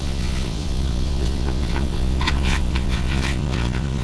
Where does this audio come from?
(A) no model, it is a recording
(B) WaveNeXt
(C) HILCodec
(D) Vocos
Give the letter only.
D